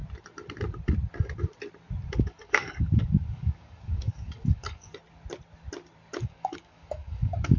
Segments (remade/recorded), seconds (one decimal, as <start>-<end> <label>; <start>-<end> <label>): 0.0-2.1 recorded; 2.1-4.9 remade; 4.9-6.2 recorded; 6.2-7.6 remade